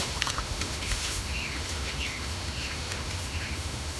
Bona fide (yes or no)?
no